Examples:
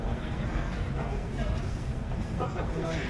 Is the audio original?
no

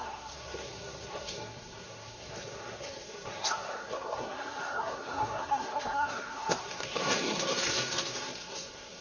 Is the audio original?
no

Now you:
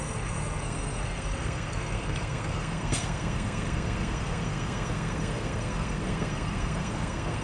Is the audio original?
no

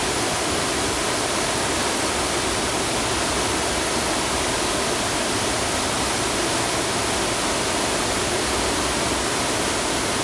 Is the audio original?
yes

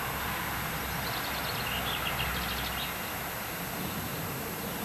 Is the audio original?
yes